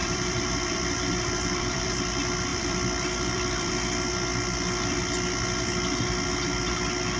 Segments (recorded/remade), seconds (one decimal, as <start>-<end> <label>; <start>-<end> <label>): 0.0-1.9 remade; 1.9-2.5 recorded; 2.5-3.7 remade; 3.7-7.2 recorded